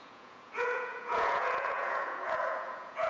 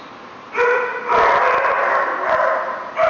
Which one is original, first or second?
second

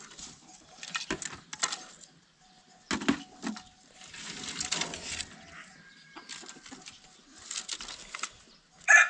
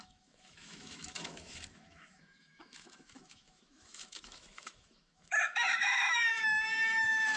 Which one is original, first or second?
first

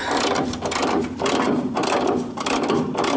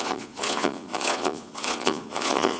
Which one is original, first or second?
first